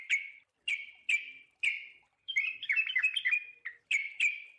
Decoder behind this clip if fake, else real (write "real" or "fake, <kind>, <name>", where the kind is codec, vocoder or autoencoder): fake, vocoder, BigVGAN v2